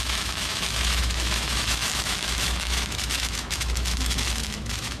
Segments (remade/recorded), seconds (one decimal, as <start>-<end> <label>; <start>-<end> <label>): 0.0-5.0 remade